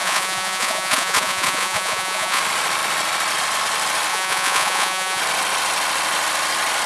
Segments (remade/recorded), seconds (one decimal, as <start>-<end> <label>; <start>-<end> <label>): 0.0-2.4 remade; 2.4-4.1 recorded; 4.1-5.2 remade; 5.2-6.9 recorded